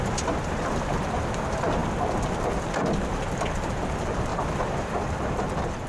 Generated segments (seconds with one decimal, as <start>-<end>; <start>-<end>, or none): 0.0-0.9; 4.3-5.5

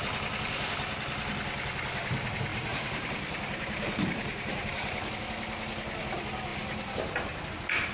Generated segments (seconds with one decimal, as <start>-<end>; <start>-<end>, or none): 2.5-5.1; 6.5-7.5